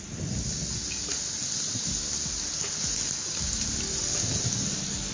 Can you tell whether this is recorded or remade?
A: recorded